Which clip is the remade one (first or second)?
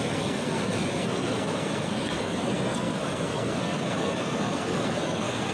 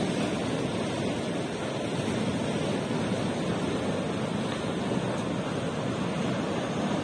first